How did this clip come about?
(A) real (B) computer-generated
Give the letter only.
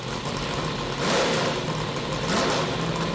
A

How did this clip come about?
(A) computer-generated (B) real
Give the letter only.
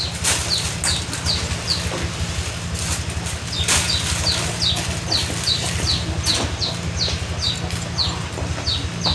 B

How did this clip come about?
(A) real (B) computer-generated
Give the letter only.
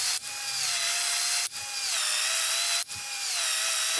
A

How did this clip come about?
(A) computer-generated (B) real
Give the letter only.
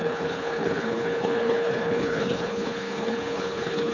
A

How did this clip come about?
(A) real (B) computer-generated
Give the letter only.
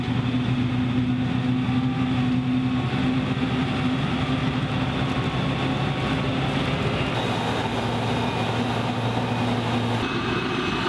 A